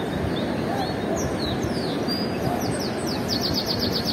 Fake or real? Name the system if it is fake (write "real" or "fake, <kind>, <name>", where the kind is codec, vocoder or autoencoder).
real